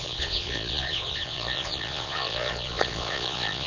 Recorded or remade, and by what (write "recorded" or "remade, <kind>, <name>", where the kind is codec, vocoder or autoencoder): remade, vocoder, Vocos